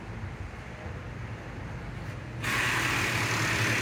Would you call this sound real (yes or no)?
yes